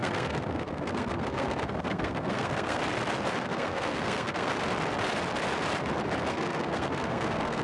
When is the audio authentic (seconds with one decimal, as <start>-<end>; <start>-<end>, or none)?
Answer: 2.8-3.4; 4.5-6.3